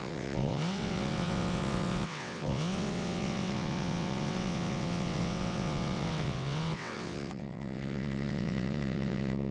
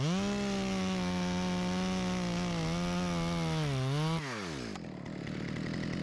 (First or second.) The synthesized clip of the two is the first